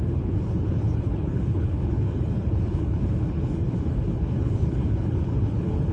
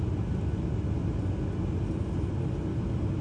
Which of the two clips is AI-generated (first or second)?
first